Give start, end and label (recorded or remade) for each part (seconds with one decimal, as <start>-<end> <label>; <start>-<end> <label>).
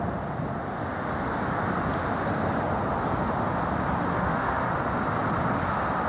0.0-4.1 recorded; 4.1-4.7 remade; 4.7-6.1 recorded